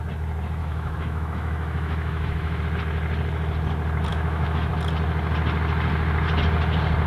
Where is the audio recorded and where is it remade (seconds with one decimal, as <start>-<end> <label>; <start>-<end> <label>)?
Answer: 0.0-0.6 recorded; 0.6-2.6 remade; 2.6-4.1 recorded; 4.1-4.7 remade; 4.7-7.1 recorded